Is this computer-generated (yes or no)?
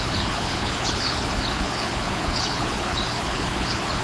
yes